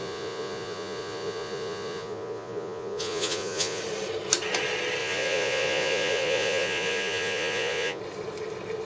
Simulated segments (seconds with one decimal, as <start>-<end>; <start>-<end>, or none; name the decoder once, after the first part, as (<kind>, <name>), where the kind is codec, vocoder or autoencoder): 0.0-3.8 (vocoder, Vocos); 5.0-8.0